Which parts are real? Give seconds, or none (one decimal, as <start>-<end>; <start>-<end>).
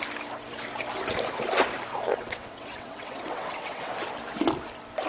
0.0-1.9; 3.9-5.1